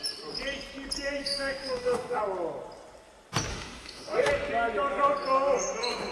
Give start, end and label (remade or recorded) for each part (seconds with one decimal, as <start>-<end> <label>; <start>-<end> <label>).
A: 0.0-1.2 recorded; 1.2-2.2 remade; 2.2-3.5 recorded; 3.5-4.3 remade; 4.3-6.1 recorded